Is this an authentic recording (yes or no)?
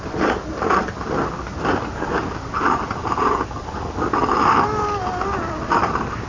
yes